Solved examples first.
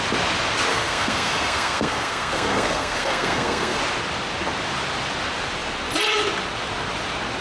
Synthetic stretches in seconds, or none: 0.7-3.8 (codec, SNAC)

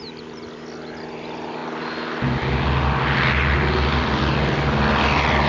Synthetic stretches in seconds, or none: none

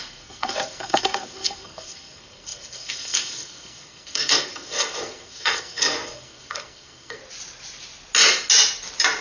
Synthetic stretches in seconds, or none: 0.0-7.2 (codec, SNAC)

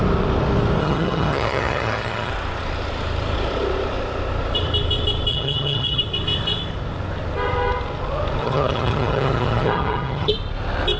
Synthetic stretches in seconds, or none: 0.8-2.3 (vocoder, HiFi-GAN); 5.3-6.0; 8.4-10.3

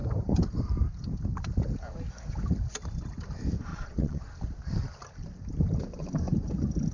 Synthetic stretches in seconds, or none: 3.7-4.2 (vocoder, Vocos)

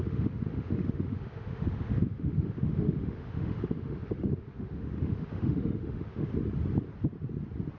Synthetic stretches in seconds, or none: 0.0-6.3 (autoencoder, DAC-VAE)